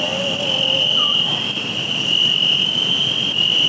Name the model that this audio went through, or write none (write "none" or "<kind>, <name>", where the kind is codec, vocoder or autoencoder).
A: none